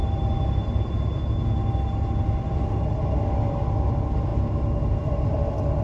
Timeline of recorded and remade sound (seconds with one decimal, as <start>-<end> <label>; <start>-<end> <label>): 0.0-5.8 recorded